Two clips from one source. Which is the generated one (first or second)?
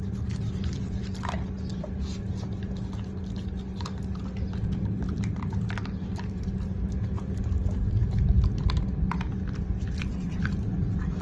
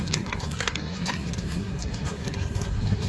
second